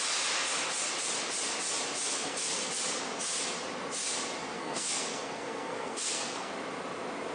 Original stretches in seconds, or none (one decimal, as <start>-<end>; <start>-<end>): 0.0-2.1; 2.7-4.4; 6.5-7.3